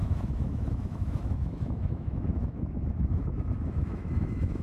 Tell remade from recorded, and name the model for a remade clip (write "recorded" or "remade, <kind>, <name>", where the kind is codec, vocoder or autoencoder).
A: remade, autoencoder, DAC-VAE